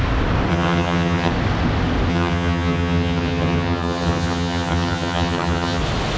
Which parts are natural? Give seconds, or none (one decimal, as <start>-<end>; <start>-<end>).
0.0-0.5; 1.3-2.1; 5.8-6.2